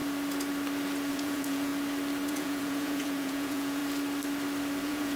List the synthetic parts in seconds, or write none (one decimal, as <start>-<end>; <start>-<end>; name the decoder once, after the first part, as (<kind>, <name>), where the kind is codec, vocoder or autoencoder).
1.1-1.7 (vocoder, Vocos); 2.3-3.8; 4.8-5.2